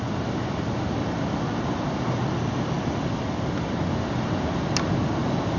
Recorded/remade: recorded